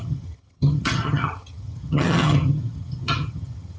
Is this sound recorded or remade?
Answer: remade